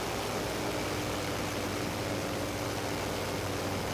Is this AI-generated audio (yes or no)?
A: no